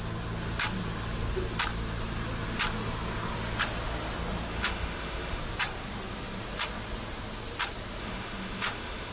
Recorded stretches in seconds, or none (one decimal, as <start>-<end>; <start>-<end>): 0.0-4.5; 5.4-8.0